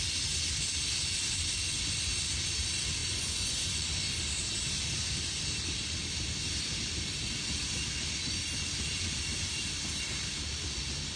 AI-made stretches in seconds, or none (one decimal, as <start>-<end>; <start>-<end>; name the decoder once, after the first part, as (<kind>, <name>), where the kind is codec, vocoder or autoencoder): 3.0-4.2 (vocoder, Vocos)